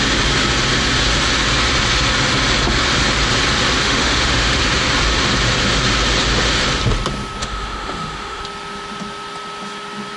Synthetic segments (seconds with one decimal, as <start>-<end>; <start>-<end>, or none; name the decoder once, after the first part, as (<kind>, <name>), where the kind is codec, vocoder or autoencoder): 3.8-4.6 (autoencoder, DAC-VAE); 7.4-8.4